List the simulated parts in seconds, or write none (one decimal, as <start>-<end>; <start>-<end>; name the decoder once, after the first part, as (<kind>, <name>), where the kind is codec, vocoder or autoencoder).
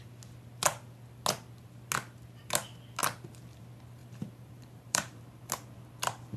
4.0-5.2 (vocoder, BigVGAN v2)